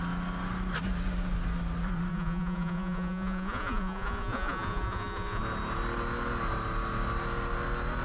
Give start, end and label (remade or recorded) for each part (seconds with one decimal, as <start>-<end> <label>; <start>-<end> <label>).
0.0-2.1 recorded; 2.1-5.4 remade; 5.4-8.0 recorded

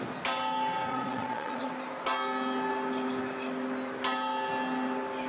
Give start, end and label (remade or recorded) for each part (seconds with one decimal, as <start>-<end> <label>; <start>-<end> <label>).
0.0-0.9 recorded; 0.9-1.7 remade; 1.7-5.3 recorded

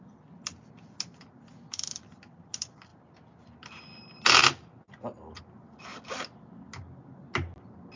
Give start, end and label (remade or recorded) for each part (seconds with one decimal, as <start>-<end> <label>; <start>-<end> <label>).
0.0-8.0 recorded

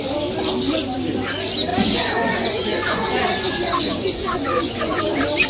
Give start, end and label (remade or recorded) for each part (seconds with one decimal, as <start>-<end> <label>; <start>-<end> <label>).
0.0-1.7 recorded; 1.7-5.0 remade; 5.0-5.5 recorded

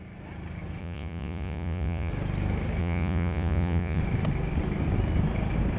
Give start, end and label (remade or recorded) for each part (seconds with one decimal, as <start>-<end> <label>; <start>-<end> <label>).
0.0-0.8 recorded; 0.8-2.1 remade; 2.1-2.8 recorded; 2.8-4.0 remade; 4.0-5.8 recorded

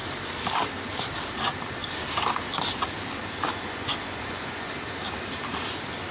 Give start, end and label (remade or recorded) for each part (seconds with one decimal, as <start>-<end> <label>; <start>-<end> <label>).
0.0-3.5 recorded; 3.5-4.7 remade; 4.7-6.1 recorded

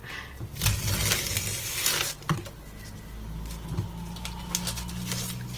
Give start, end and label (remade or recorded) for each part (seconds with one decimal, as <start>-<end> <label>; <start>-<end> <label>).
0.0-5.6 recorded

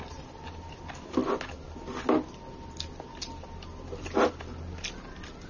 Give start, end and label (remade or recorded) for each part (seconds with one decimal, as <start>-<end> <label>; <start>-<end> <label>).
0.0-5.5 recorded